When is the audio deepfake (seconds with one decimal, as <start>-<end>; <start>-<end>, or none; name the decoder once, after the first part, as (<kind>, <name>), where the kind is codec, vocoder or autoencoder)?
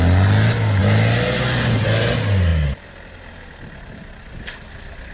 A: none